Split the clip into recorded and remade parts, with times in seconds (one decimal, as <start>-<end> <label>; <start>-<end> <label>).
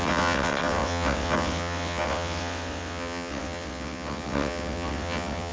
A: 0.0-5.5 remade